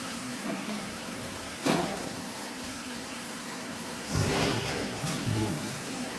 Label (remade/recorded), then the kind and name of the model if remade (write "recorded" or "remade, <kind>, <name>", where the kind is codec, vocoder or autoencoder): remade, codec, SNAC